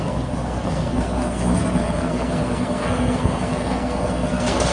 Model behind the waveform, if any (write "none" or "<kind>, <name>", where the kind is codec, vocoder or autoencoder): codec, SNAC